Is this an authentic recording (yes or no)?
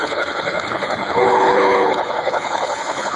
no